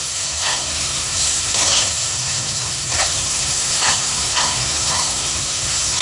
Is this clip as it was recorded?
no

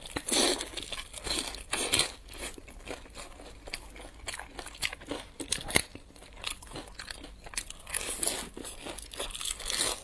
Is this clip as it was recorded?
yes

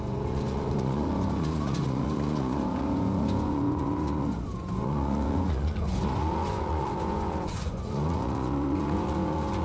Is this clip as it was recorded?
no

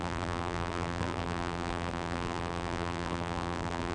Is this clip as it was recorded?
no